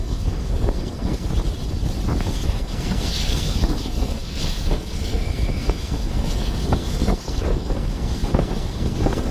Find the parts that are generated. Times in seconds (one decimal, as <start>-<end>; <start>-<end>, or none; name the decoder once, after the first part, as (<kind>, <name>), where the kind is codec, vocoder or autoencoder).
0.0-1.3 (codec, SNAC); 2.2-9.3